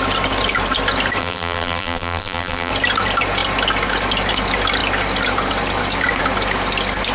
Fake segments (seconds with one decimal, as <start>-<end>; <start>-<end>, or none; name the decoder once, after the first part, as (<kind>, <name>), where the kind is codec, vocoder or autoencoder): 1.2-2.7 (vocoder, BigVGAN v2)